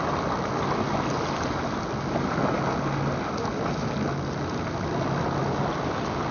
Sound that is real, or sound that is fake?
real